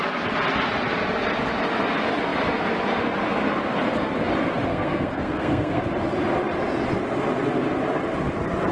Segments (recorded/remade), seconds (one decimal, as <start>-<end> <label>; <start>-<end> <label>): 0.0-4.7 recorded; 4.7-5.8 remade; 5.8-8.7 recorded